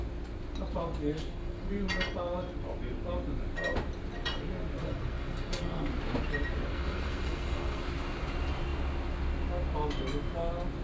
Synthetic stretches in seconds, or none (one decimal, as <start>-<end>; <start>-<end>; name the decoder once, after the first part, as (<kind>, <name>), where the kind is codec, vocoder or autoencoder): 1.0-1.7 (codec, SNAC); 4.8-5.9; 6.7-7.8